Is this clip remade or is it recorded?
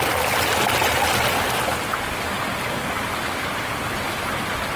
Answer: recorded